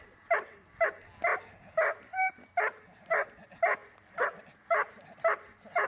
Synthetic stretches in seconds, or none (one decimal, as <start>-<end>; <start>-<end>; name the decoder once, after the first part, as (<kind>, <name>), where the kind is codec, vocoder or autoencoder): none